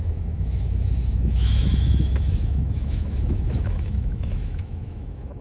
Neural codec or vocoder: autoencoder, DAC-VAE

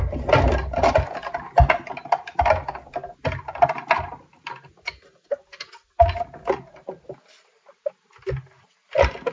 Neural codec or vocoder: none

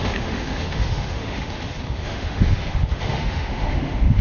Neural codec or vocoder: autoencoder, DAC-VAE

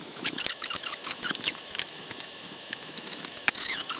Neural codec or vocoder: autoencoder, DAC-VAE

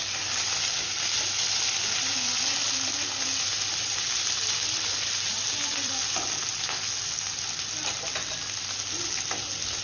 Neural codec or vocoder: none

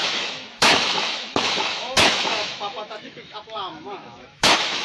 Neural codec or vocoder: autoencoder, DAC-VAE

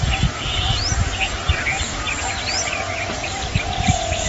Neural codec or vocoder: none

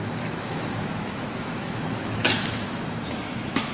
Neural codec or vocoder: autoencoder, DAC-VAE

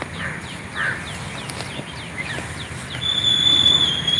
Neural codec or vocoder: none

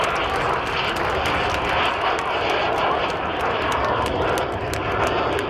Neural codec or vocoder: none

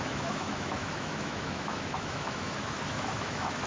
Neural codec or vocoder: autoencoder, DAC-VAE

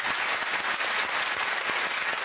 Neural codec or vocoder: none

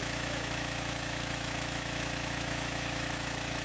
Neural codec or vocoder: autoencoder, DAC-VAE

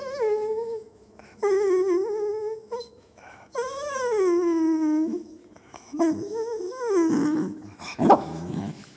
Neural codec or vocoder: autoencoder, DAC-VAE